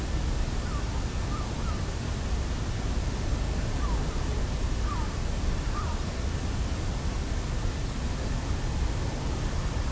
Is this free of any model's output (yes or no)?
yes